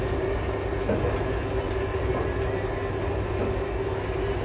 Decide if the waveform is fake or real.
real